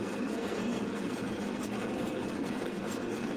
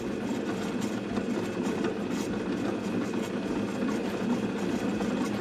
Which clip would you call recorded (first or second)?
second